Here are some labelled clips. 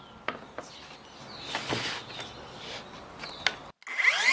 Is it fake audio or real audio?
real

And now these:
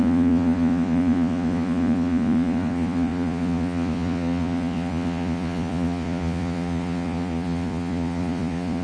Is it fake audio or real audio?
fake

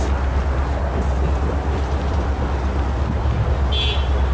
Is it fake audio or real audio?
real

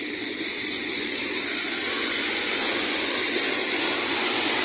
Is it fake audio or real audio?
fake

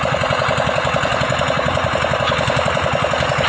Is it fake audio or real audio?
real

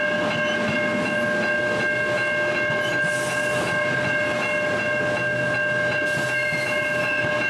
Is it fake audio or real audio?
real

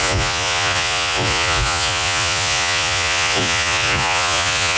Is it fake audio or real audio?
fake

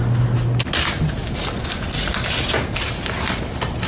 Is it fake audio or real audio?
real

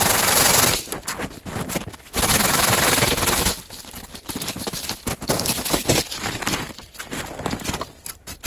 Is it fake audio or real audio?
real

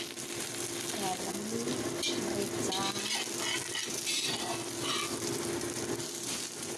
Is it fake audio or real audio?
real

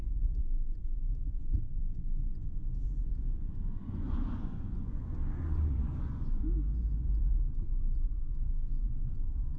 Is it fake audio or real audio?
fake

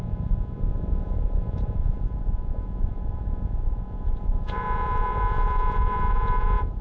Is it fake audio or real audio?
fake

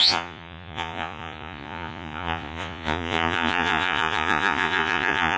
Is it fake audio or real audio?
fake